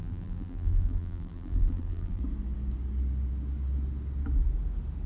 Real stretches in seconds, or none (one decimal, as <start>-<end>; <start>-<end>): 2.2-5.1